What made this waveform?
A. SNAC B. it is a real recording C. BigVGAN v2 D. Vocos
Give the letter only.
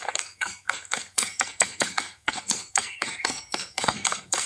A